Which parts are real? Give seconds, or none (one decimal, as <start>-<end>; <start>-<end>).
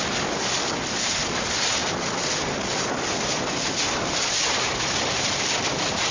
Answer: 0.0-6.1